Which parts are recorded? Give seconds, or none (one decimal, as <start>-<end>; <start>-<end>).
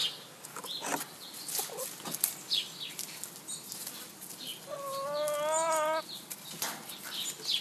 0.0-7.6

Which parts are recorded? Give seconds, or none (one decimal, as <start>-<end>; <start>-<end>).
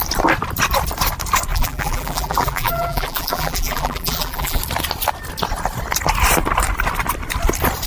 0.0-1.5; 4.6-7.9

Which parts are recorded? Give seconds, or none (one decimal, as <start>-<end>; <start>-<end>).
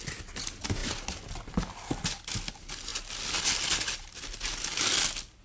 0.0-5.4